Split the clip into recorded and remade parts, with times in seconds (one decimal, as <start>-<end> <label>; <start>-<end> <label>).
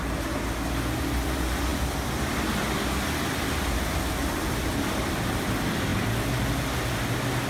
0.0-7.5 recorded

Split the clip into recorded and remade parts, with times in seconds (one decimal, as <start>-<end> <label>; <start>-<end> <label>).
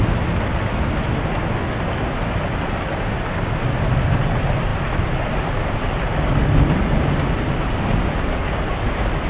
0.0-9.3 recorded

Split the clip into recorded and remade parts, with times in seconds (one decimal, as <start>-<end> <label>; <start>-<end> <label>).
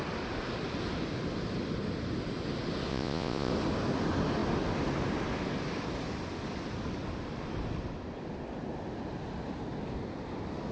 0.0-2.9 recorded; 2.9-3.5 remade; 3.5-10.7 recorded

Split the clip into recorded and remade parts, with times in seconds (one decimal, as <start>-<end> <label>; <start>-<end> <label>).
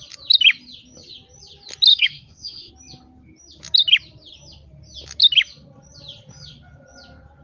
0.0-1.9 recorded; 1.9-2.7 remade; 2.7-7.4 recorded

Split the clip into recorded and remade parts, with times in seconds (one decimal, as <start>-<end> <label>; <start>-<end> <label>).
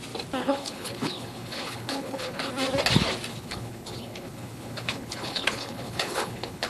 0.0-0.4 recorded; 0.4-2.5 remade; 2.5-3.3 recorded; 3.3-6.7 remade